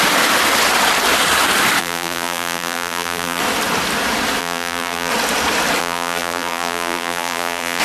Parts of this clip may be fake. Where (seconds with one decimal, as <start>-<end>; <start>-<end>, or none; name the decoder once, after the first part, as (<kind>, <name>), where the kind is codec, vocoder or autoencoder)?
1.8-3.4 (vocoder, BigVGAN v2); 4.4-5.1; 5.8-7.8